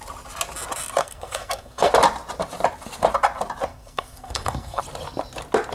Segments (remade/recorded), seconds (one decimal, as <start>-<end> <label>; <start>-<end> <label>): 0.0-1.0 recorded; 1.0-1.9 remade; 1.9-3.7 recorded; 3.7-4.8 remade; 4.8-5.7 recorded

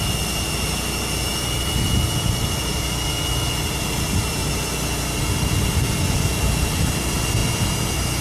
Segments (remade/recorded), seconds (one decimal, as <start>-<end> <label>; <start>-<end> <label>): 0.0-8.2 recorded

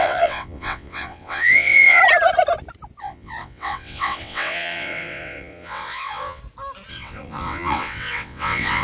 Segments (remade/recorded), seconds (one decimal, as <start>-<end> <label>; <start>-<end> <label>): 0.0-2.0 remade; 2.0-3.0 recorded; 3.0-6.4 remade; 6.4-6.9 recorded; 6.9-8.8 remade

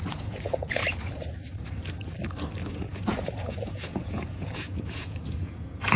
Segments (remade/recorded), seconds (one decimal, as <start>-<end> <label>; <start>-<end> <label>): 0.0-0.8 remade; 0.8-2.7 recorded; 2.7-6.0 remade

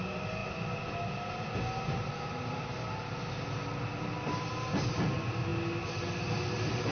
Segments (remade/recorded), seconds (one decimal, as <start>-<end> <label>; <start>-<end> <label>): 0.0-6.9 recorded

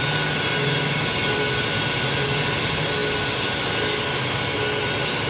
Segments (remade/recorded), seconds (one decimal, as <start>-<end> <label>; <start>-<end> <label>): 0.0-5.3 recorded

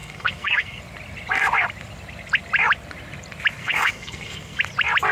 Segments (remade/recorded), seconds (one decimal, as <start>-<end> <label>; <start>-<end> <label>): 0.0-0.8 remade; 0.8-3.6 recorded; 3.6-4.6 remade; 4.6-5.1 recorded